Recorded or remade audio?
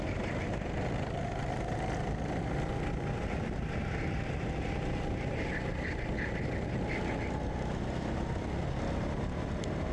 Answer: recorded